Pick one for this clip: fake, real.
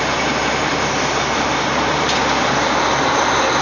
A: fake